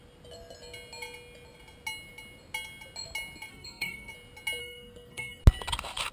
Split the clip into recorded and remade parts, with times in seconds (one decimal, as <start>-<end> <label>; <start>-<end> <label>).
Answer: 0.0-3.5 recorded; 3.5-4.1 remade; 4.1-4.6 recorded; 4.6-5.4 remade; 5.4-6.1 recorded